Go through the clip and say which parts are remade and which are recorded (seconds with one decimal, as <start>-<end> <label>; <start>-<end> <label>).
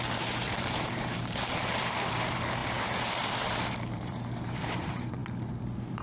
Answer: 0.0-5.2 remade; 5.2-6.0 recorded